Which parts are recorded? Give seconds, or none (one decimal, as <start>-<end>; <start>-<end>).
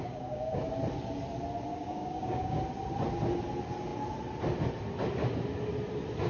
0.6-1.7; 2.6-6.3